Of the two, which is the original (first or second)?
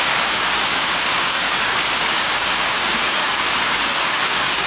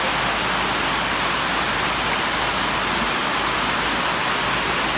second